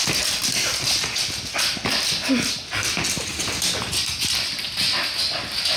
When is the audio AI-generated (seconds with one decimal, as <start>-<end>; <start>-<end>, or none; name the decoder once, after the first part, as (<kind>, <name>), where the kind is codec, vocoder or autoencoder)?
none